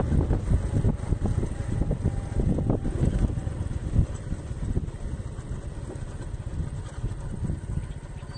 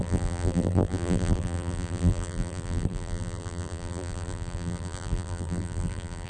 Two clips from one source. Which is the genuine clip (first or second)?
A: first